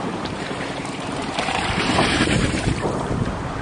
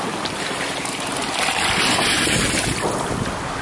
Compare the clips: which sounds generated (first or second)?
first